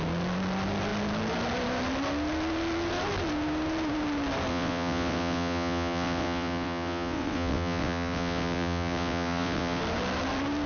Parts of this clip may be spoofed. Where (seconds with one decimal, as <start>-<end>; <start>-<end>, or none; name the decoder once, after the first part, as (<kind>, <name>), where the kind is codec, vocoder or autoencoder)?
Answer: 4.5-9.8 (vocoder, WaveNeXt)